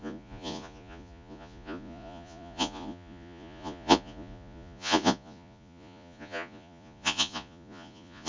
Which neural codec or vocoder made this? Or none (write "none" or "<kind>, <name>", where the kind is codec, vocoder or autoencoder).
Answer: vocoder, Vocos